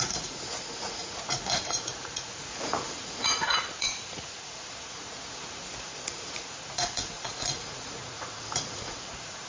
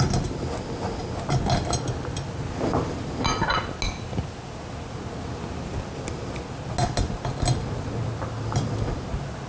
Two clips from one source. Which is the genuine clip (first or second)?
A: second